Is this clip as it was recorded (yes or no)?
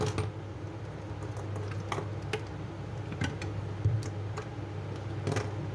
yes